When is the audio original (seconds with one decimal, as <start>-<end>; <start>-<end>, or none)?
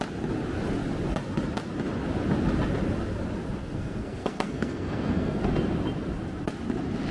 0.0-3.6; 5.5-7.1